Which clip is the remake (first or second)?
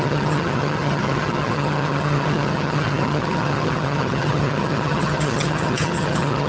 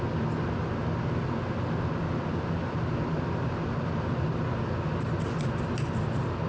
first